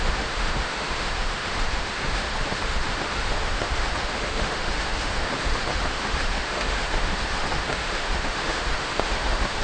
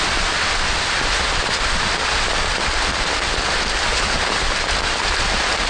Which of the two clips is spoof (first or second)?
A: first